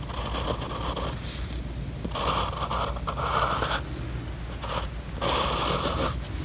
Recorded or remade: recorded